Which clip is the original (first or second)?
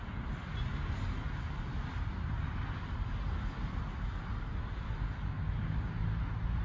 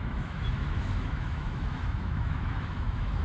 first